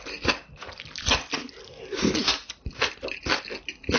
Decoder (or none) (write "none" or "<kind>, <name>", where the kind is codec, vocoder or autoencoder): none